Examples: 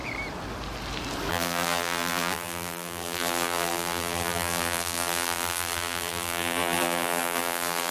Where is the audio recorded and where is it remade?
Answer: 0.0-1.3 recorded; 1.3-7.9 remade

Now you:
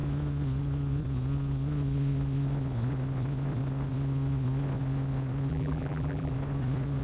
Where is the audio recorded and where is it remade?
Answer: 0.0-5.5 recorded; 5.5-6.3 remade; 6.3-7.0 recorded

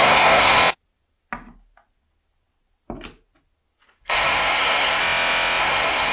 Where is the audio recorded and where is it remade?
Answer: 0.0-0.6 remade; 0.6-4.0 recorded; 4.0-5.0 remade; 5.0-5.6 recorded; 5.6-6.1 remade

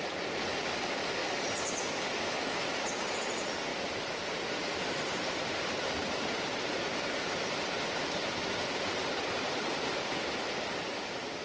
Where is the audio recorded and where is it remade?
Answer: 0.0-1.2 recorded; 1.2-2.9 remade; 2.9-3.7 recorded; 3.7-7.4 remade; 7.4-11.4 recorded

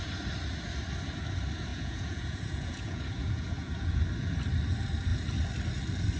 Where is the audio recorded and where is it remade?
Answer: 0.0-1.7 recorded; 1.7-4.0 remade; 4.0-6.2 recorded

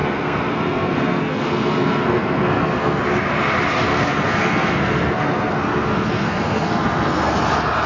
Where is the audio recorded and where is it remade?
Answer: 0.0-3.0 remade; 3.0-3.9 recorded; 3.9-7.3 remade; 7.3-7.9 recorded